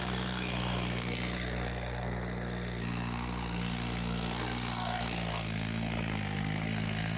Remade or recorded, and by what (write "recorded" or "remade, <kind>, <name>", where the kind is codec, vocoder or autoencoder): remade, codec, SNAC